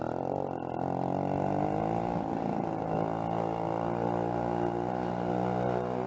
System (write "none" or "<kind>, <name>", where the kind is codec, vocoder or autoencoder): none